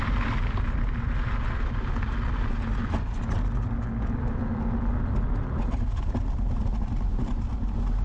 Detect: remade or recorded recorded